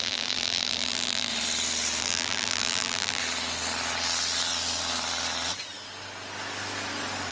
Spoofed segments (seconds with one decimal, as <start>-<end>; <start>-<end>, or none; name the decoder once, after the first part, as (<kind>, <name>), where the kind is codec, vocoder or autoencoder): 0.0-1.3 (vocoder, BigVGAN v2); 2.0-3.2